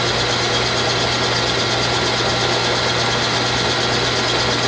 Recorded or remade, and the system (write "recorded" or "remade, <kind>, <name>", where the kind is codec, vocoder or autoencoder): recorded